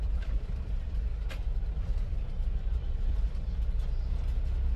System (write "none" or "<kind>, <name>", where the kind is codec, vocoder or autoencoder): none